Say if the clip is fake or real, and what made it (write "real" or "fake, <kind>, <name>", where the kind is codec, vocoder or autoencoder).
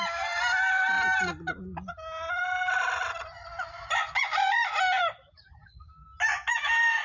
real